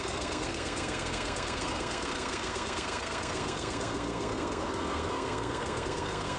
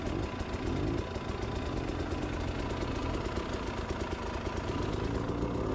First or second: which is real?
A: second